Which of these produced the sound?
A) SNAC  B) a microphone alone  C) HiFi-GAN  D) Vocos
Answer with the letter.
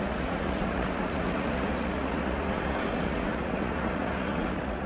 D